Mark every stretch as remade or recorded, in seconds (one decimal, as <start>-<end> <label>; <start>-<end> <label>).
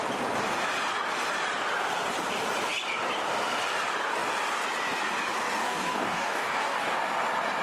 0.0-5.6 recorded; 5.6-7.0 remade; 7.0-7.6 recorded